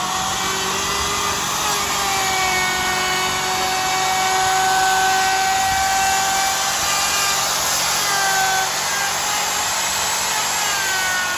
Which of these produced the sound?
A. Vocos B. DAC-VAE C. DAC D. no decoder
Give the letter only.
D